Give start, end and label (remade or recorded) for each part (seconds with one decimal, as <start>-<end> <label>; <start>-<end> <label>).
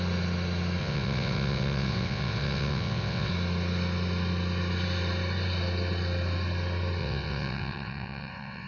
0.0-0.8 recorded; 0.8-3.3 remade; 3.3-7.0 recorded; 7.0-8.7 remade